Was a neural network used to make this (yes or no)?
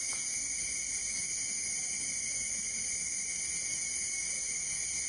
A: no